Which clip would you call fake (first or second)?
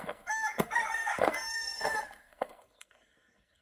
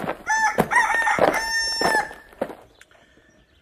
first